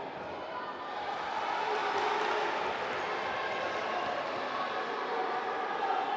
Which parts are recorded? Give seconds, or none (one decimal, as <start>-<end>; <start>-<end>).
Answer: 1.8-3.6